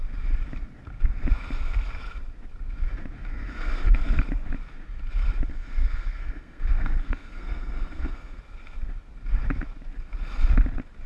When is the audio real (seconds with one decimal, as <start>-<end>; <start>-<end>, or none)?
0.0-3.3; 4.2-5.5; 8.4-11.1